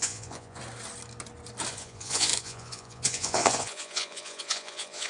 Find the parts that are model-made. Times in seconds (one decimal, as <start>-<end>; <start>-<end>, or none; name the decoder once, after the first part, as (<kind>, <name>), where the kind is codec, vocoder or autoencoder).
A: 0.0-0.6 (vocoder, Vocos); 1.7-5.1